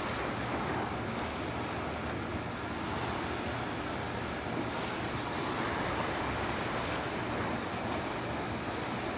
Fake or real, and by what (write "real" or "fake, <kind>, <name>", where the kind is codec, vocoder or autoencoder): real